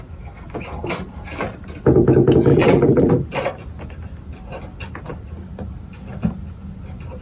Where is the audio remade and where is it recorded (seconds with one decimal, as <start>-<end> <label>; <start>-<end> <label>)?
0.0-2.5 recorded; 2.5-3.1 remade; 3.1-7.2 recorded